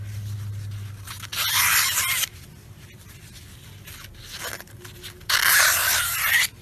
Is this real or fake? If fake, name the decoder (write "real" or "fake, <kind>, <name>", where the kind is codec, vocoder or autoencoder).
real